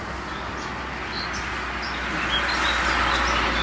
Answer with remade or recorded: recorded